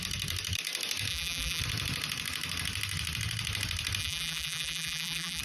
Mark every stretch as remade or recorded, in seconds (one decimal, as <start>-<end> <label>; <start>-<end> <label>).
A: 0.0-1.1 recorded; 1.1-1.6 remade; 1.6-4.0 recorded; 4.0-5.4 remade